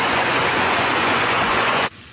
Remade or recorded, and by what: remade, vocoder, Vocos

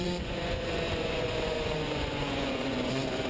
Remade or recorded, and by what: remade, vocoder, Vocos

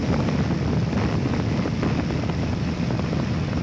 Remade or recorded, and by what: recorded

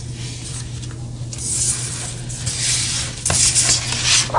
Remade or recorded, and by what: recorded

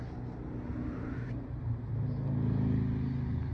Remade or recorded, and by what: recorded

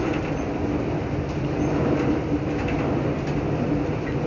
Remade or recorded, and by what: recorded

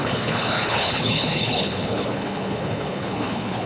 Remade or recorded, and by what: remade, codec, HILCodec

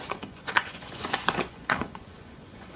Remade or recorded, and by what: remade, vocoder, Vocos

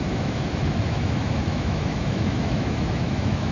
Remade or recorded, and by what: remade, autoencoder, DAC-VAE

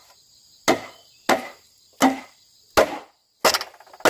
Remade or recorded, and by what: recorded